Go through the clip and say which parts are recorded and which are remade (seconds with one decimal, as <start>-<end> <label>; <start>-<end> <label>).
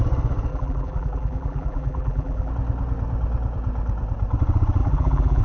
0.0-0.5 recorded; 0.5-2.5 remade; 2.5-4.8 recorded; 4.8-5.4 remade